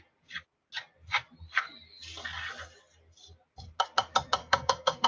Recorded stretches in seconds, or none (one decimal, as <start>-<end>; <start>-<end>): 0.0-4.4